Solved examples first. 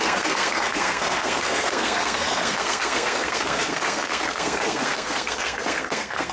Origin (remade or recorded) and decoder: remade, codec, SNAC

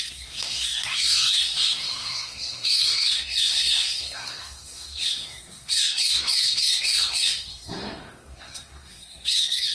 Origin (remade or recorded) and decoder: remade, codec, SNAC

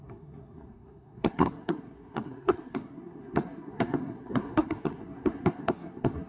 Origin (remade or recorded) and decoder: remade, codec, SNAC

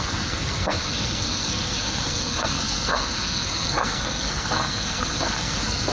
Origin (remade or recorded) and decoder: remade, codec, SNAC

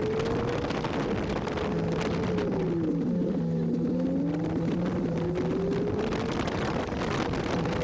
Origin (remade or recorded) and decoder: recorded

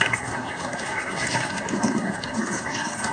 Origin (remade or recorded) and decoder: remade, codec, SNAC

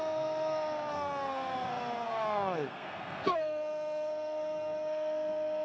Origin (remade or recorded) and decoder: remade, codec, SNAC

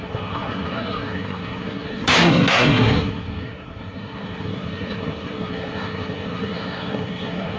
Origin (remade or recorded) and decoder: remade, codec, SNAC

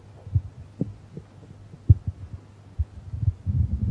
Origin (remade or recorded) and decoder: recorded